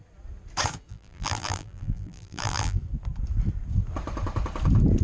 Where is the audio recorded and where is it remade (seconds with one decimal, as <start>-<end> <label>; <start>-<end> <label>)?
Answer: 0.0-0.9 recorded; 0.9-2.8 remade; 2.8-5.0 recorded